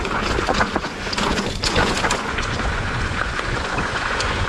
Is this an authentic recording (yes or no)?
no